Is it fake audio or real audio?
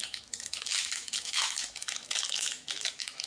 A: fake